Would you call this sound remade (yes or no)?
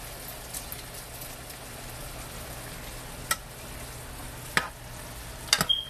no